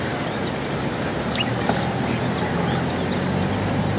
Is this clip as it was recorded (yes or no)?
yes